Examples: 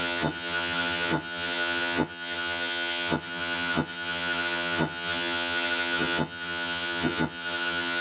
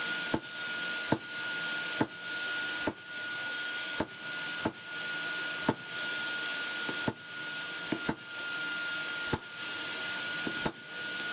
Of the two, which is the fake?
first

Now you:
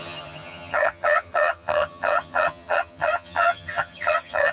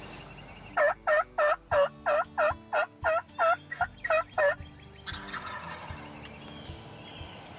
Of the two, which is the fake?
first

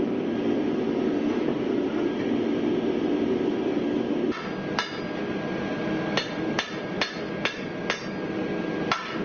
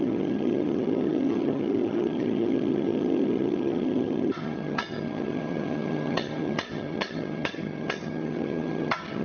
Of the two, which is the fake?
second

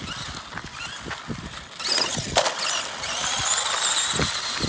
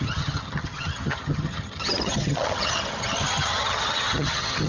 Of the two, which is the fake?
second